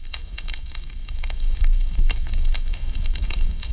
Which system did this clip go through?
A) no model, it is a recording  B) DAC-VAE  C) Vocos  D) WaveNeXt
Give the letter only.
B